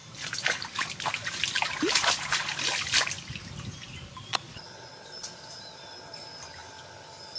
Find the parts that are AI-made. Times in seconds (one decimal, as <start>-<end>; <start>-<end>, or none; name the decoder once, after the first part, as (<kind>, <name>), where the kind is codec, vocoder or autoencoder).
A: 4.3-4.9 (vocoder, Vocos)